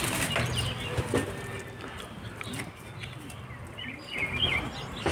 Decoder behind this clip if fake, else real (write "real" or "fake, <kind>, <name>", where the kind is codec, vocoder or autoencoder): real